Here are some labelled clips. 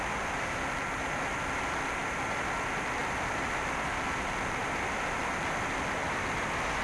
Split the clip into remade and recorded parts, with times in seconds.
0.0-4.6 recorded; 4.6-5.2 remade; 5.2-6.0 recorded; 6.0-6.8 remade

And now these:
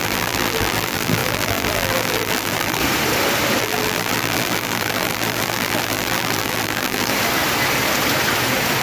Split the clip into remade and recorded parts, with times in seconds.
0.0-2.8 remade; 2.8-3.6 recorded; 3.6-7.1 remade; 7.1-8.8 recorded

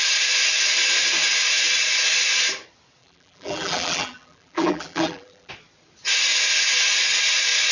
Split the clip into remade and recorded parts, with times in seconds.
0.0-3.0 recorded; 3.0-5.5 remade; 5.5-7.7 recorded

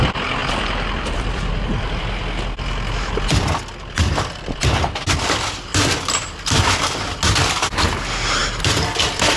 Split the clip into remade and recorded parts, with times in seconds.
0.0-0.4 recorded; 0.4-2.0 remade; 2.0-5.7 recorded; 5.7-7.1 remade; 7.1-9.4 recorded

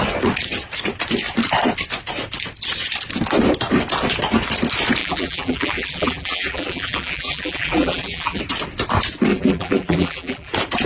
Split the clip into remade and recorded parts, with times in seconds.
0.0-5.0 recorded; 5.0-8.4 remade; 8.4-9.3 recorded; 9.3-10.5 remade; 10.5-10.9 recorded

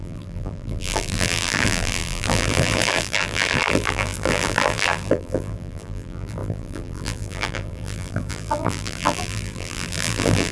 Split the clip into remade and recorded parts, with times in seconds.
0.0-10.5 remade

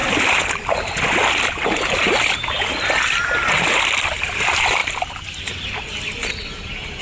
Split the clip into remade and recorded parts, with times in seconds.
0.0-4.2 recorded; 4.2-4.8 remade; 4.8-5.5 recorded; 5.5-6.2 remade; 6.2-7.0 recorded

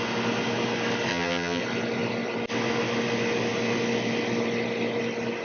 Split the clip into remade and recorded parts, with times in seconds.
0.0-1.1 recorded; 1.1-1.6 remade; 1.6-5.4 recorded